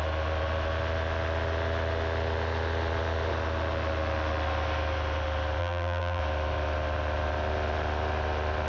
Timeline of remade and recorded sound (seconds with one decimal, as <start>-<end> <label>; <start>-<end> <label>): 0.0-5.6 recorded; 5.6-6.2 remade; 6.2-8.7 recorded